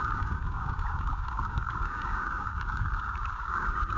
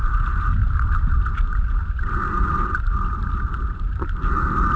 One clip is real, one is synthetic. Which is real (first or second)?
second